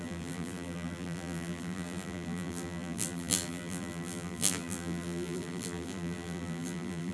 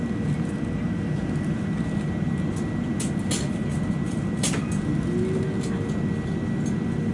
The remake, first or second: first